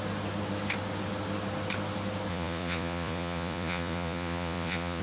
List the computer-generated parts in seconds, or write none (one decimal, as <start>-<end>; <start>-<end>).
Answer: 2.3-5.0